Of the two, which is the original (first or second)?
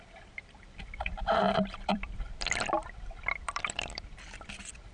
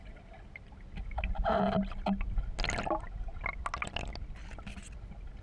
second